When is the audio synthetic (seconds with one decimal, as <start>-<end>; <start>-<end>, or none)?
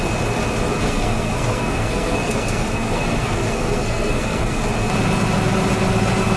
0.8-4.6